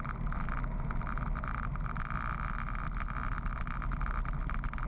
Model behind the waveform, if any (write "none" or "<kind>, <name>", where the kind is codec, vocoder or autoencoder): none